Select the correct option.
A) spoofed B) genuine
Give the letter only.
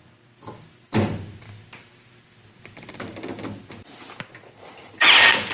B